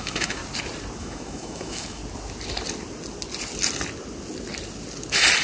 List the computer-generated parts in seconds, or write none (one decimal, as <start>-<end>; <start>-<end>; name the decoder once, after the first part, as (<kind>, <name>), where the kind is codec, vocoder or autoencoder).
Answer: 0.0-0.4 (autoencoder, DAC-VAE); 1.0-2.0